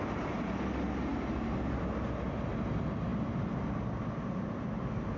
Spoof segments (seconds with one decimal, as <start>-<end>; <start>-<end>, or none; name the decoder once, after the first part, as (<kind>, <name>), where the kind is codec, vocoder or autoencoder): none